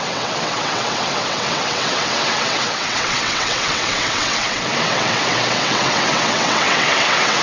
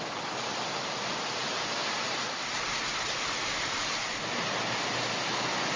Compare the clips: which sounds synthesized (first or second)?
first